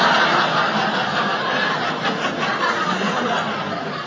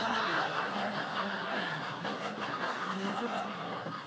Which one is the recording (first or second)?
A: first